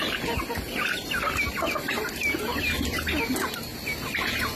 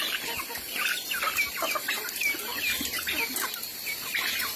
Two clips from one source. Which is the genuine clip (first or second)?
first